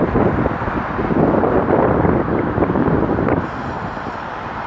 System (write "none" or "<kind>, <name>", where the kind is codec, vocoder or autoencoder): none